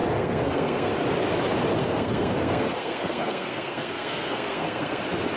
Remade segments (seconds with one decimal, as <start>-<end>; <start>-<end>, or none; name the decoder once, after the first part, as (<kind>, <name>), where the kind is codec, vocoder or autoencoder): 0.0-0.9 (codec, SNAC); 1.8-5.0